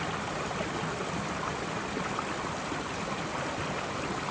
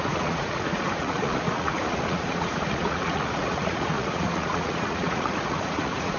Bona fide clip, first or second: first